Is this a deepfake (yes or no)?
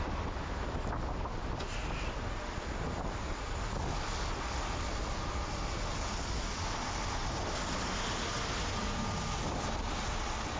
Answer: no